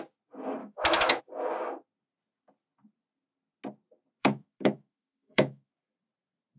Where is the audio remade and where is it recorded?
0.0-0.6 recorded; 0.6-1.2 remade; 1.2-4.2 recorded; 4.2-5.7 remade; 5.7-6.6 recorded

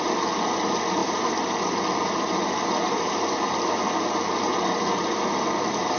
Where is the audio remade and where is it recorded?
0.0-6.0 recorded

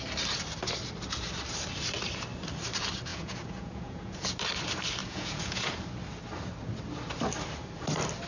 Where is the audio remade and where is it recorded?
0.0-3.1 recorded; 3.1-4.3 remade; 4.3-5.0 recorded; 5.0-5.8 remade; 5.8-8.3 recorded